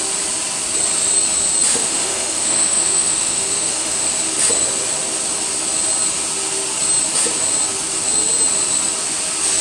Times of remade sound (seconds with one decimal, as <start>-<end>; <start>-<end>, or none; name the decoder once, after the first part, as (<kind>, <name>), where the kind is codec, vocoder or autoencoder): 1.7-4.1 (autoencoder, DAC-VAE)